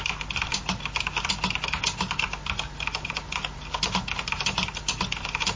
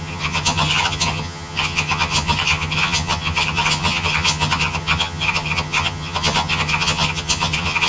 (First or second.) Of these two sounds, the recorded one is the first